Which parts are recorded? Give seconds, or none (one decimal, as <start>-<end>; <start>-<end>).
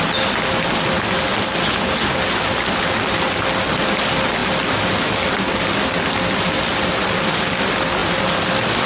0.0-8.9